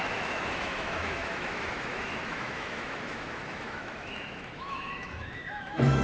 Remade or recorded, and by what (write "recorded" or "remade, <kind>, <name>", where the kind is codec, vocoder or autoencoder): remade, autoencoder, DAC-VAE